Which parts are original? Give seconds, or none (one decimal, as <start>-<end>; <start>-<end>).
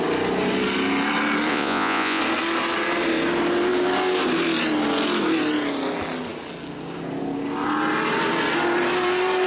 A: 0.0-1.5; 2.2-9.5